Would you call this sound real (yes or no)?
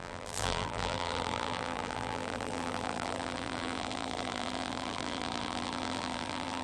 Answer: no